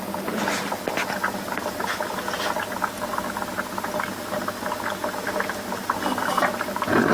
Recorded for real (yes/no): yes